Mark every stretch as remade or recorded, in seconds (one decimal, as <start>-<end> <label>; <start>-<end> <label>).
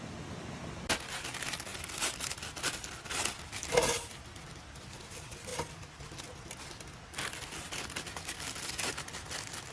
0.0-9.7 recorded